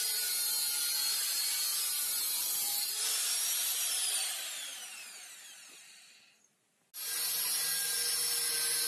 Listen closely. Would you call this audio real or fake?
real